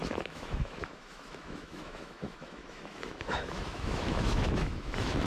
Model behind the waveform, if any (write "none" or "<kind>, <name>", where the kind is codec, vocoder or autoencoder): autoencoder, DAC-VAE